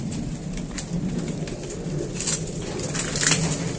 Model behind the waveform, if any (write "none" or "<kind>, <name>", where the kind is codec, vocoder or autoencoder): none